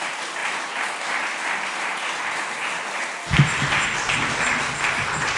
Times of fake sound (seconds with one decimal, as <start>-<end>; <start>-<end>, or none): none